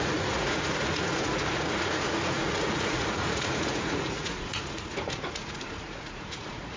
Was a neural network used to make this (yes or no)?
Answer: yes